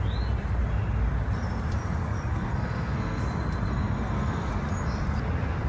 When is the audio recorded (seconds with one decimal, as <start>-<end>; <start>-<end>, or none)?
0.0-2.3; 3.2-3.7; 4.5-5.7